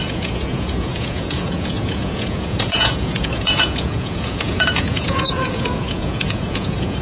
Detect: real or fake fake